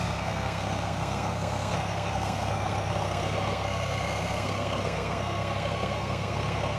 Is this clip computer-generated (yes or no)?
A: yes